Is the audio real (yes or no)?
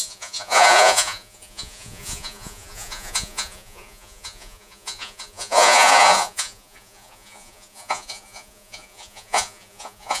no